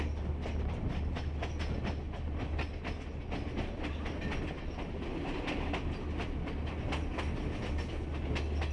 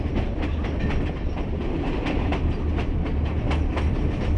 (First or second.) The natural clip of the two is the first